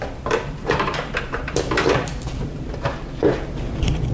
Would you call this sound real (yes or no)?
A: no